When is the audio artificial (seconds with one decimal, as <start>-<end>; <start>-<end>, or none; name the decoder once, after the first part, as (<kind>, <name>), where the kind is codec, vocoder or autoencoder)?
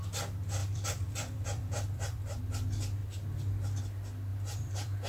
0.6-2.4 (vocoder, BigVGAN v2); 4.3-5.1